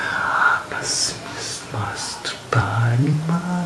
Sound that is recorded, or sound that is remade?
remade